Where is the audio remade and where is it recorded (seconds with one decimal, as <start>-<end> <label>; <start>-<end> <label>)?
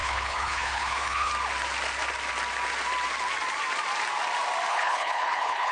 0.0-1.3 remade; 1.3-4.7 recorded; 4.7-5.7 remade